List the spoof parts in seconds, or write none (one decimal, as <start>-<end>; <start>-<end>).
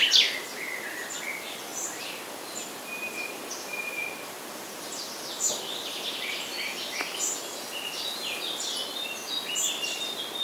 none